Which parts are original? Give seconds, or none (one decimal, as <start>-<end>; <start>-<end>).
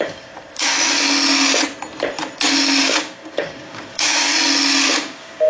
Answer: 0.7-2.8; 4.3-4.9